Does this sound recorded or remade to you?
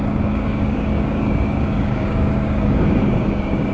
remade